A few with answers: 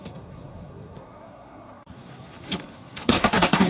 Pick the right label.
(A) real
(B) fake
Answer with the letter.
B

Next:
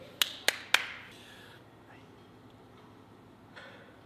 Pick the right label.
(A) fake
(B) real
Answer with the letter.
B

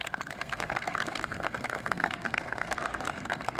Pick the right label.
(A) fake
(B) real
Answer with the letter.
A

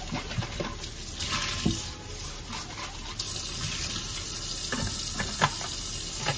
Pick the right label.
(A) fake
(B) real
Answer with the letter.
B